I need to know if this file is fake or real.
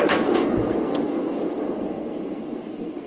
fake